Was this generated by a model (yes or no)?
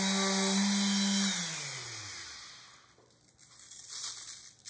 no